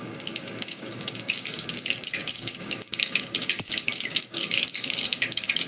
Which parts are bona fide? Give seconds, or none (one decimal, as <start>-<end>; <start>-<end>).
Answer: none